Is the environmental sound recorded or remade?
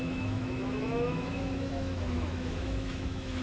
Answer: remade